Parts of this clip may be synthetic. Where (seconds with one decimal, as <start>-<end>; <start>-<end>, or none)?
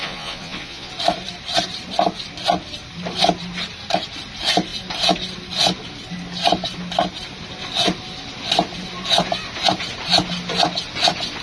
0.0-0.9